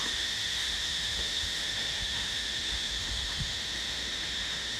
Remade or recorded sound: remade